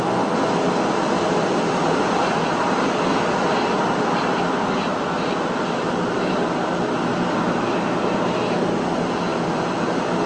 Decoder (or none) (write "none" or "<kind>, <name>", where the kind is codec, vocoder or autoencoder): none